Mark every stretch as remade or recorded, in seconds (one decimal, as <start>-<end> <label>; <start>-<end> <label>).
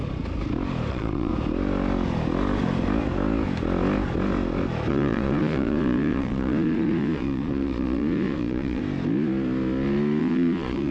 0.0-0.9 recorded; 0.9-1.3 remade; 1.3-4.9 recorded; 4.9-8.8 remade; 8.8-10.2 recorded; 10.2-10.9 remade